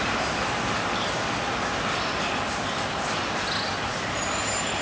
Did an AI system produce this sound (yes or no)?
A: no